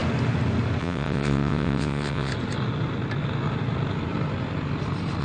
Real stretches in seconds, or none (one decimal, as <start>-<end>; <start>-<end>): 0.0-0.8; 2.3-5.2